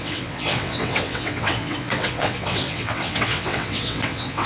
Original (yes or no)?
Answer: no